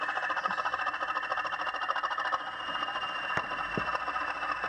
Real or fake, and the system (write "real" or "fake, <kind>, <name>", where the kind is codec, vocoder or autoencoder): real